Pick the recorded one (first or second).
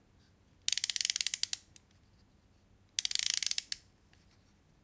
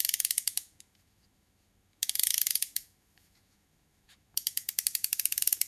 first